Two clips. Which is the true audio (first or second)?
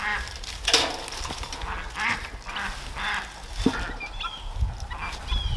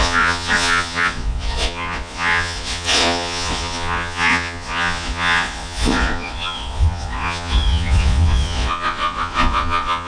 first